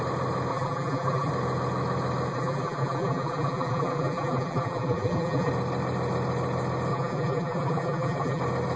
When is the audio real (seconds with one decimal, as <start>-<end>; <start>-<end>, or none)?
0.0-0.5; 1.3-2.3; 5.5-6.9; 8.4-8.8